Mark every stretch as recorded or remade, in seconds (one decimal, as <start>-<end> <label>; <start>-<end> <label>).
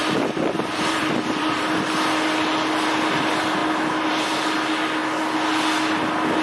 0.0-1.8 remade; 1.8-6.4 recorded